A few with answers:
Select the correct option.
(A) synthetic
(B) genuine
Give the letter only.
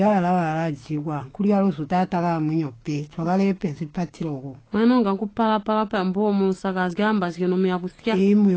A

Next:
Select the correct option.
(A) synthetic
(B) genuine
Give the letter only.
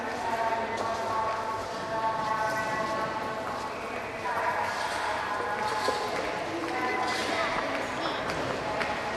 B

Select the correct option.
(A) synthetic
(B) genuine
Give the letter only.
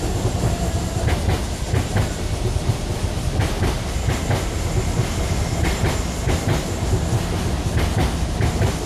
B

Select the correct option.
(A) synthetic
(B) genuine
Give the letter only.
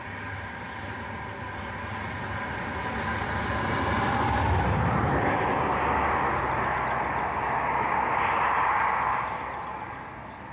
B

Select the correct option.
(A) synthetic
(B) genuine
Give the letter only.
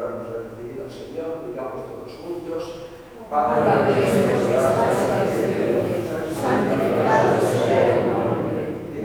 A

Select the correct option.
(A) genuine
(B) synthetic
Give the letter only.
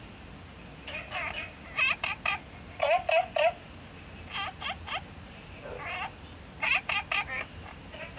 A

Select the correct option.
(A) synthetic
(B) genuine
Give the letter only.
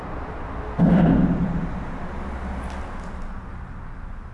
B